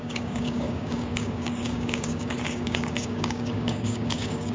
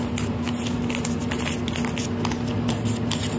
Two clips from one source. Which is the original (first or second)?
second